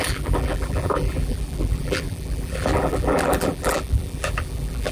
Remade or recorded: remade